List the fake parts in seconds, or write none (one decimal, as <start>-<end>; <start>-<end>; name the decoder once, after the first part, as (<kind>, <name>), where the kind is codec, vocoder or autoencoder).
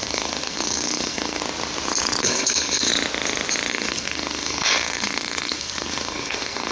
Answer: 0.0-1.4 (codec, SNAC); 2.2-2.9; 3.7-6.7